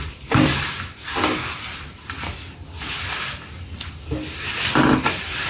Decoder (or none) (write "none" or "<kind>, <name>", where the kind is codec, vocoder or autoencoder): none